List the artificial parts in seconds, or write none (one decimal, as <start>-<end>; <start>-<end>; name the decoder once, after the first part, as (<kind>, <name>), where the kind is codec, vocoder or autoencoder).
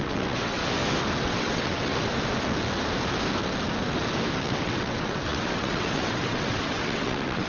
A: 0.0-0.6 (vocoder, WaveNeXt); 1.2-1.9; 4.4-7.5